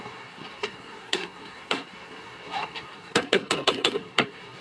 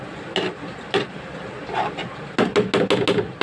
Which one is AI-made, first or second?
first